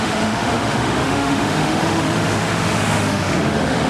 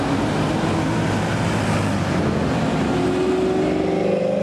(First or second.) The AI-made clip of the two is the first